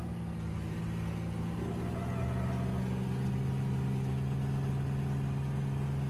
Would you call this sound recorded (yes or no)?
yes